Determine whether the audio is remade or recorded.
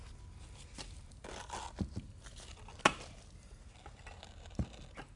recorded